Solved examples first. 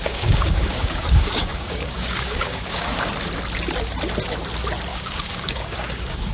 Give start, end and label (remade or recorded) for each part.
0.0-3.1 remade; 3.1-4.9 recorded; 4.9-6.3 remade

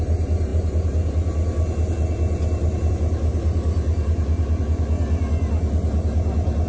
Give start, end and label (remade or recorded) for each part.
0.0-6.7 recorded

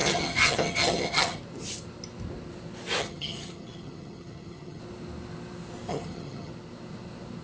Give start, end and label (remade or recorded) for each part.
0.0-1.4 remade; 1.4-3.0 recorded; 3.0-4.8 remade; 4.8-5.9 recorded; 5.9-6.5 remade; 6.5-7.4 recorded

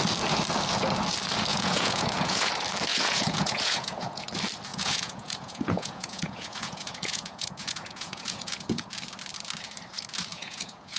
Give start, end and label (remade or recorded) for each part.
0.0-1.5 recorded; 1.5-2.5 remade; 2.5-2.9 recorded; 2.9-4.3 remade; 4.3-4.7 recorded; 4.7-8.9 remade; 8.9-10.3 recorded; 10.3-11.0 remade